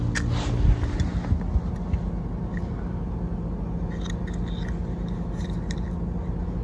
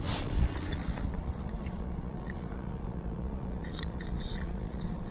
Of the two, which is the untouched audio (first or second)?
first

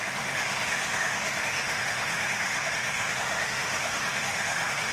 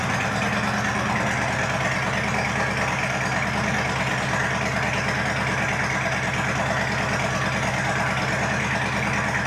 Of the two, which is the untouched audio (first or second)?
second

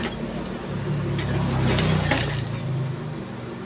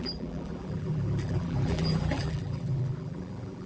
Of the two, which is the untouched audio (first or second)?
first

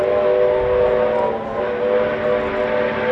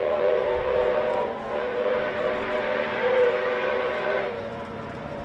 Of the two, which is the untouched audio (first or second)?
first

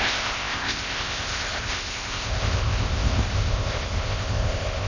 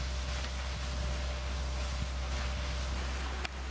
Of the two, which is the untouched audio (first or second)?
second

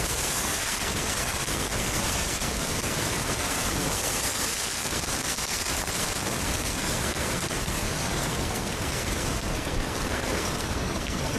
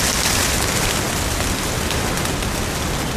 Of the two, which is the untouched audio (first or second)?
second